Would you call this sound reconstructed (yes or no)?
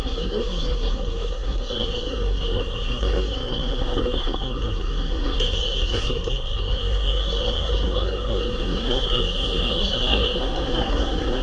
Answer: yes